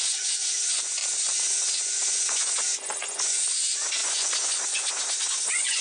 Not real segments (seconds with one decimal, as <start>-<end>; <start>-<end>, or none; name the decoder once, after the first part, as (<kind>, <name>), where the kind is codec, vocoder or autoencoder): 0.0-1.0 (vocoder, Vocos); 2.2-5.8